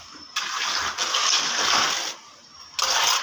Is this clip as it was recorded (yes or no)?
yes